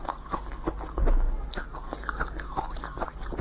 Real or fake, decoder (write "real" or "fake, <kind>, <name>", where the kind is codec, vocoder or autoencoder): real